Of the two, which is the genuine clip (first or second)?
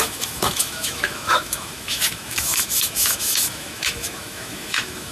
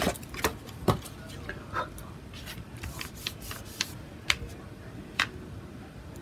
second